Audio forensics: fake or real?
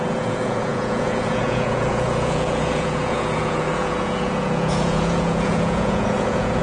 fake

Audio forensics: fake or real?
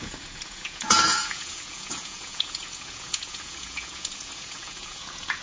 fake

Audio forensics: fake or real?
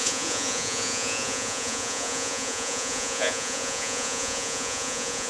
fake